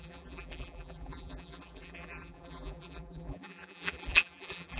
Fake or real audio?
fake